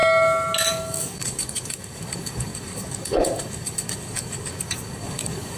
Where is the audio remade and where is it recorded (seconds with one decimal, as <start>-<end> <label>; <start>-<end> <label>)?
0.0-0.7 recorded; 0.7-5.6 remade